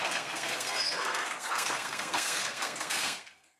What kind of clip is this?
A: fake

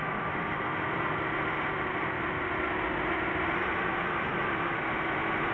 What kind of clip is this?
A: real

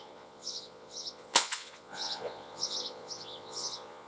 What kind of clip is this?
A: fake